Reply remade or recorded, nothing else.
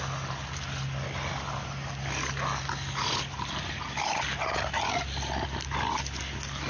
recorded